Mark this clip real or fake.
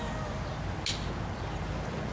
real